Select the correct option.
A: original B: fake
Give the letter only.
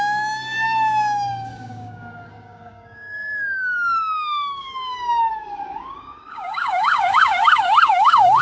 B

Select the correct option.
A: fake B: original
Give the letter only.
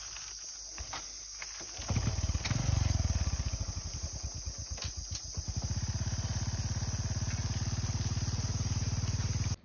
B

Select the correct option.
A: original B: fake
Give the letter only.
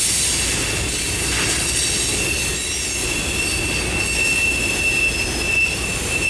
A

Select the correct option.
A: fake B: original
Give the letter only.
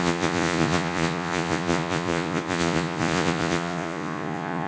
A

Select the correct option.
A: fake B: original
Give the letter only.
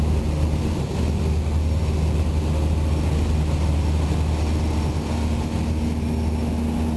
B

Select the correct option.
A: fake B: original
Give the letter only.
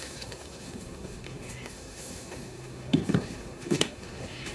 A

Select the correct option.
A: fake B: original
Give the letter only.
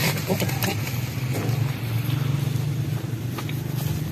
B